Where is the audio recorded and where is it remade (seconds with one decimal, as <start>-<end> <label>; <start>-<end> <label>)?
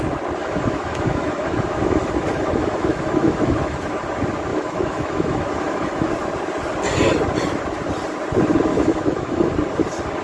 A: 0.0-0.4 recorded; 0.4-3.9 remade; 3.9-4.5 recorded; 4.5-6.1 remade; 6.1-8.7 recorded; 8.7-9.5 remade; 9.5-10.2 recorded